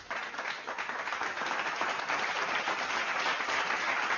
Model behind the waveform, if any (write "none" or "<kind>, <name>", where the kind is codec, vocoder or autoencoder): vocoder, BigVGAN v2